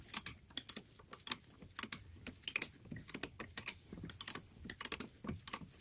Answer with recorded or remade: recorded